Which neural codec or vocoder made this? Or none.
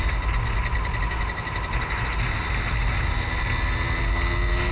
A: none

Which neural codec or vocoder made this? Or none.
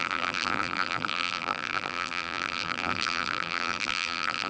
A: vocoder, BigVGAN v2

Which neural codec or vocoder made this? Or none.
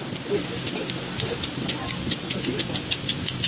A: none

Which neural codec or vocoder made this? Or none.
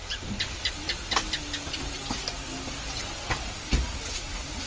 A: none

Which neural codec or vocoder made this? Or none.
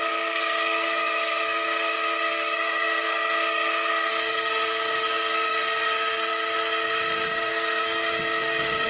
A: codec, SNAC